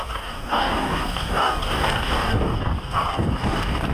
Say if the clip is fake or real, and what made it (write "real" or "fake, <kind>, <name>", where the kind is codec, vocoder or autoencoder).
fake, codec, DAC